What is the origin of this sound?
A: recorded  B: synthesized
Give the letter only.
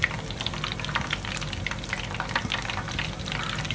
A